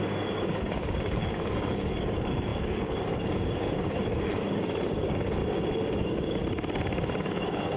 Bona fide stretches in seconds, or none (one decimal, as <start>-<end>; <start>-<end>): 5.4-6.0; 6.4-7.2

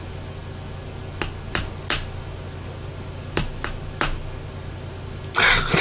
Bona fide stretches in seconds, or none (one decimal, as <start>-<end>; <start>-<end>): 0.0-5.8